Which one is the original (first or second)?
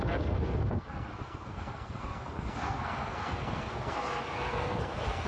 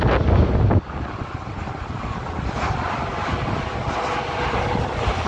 second